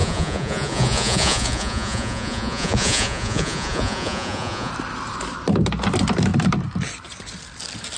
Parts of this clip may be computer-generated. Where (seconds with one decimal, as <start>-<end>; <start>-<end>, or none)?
0.0-4.7